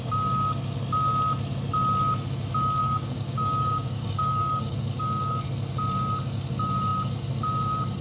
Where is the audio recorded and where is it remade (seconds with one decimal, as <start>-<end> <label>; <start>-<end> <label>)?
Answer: 0.0-2.8 recorded; 2.8-5.4 remade; 5.4-8.0 recorded